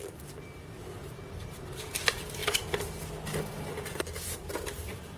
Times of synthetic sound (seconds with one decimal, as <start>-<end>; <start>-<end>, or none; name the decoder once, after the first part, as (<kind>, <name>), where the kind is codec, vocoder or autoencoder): 0.0-2.4 (vocoder, BigVGAN v2); 4.4-5.2